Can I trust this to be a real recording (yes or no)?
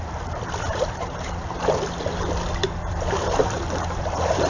no